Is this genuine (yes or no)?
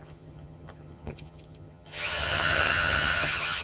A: no